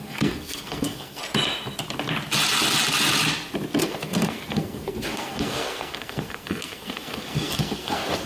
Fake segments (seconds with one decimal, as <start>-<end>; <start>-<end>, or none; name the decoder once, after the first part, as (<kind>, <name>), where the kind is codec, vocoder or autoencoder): 0.0-1.2 (codec, SNAC); 3.8-8.3